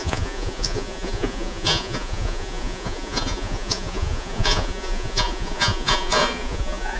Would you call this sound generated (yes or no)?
yes